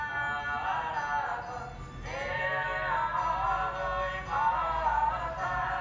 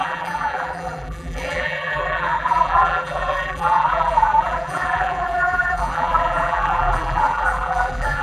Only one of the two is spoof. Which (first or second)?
second